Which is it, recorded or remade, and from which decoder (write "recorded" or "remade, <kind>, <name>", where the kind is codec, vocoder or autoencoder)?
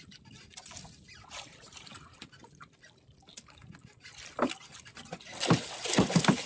recorded